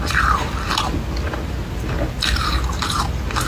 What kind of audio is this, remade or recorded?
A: recorded